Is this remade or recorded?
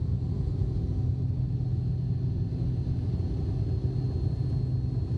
recorded